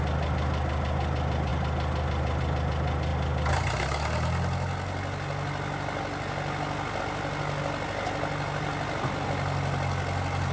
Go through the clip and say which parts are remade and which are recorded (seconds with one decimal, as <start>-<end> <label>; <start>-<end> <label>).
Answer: 0.0-10.5 recorded

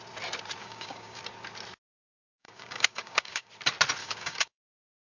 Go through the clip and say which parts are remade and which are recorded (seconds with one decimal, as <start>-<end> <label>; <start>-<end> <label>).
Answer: 0.0-0.6 recorded; 0.6-1.2 remade; 1.2-2.1 recorded; 2.1-3.5 remade; 3.5-4.0 recorded; 4.0-4.6 remade; 4.6-5.0 recorded

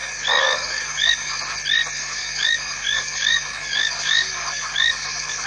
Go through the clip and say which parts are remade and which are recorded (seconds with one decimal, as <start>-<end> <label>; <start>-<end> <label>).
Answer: 0.0-1.4 remade; 1.4-2.0 recorded; 2.0-5.5 remade

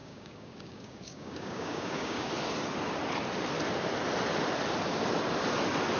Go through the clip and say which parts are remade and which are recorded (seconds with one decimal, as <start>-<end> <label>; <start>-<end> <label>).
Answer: 0.0-2.3 remade; 2.3-6.0 recorded